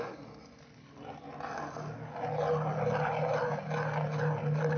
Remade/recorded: recorded